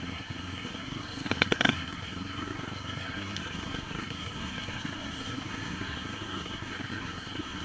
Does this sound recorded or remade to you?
remade